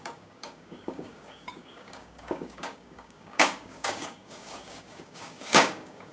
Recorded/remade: remade